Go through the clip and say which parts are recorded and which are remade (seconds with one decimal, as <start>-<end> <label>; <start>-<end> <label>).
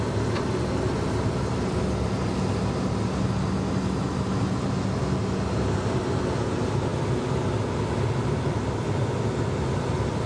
0.0-10.3 recorded